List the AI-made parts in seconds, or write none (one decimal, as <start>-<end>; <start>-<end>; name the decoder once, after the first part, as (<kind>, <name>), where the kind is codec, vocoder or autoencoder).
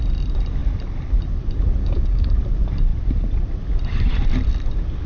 1.8-2.3 (codec, DAC)